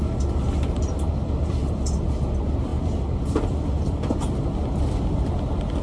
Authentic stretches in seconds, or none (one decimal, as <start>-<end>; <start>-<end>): 0.0-5.8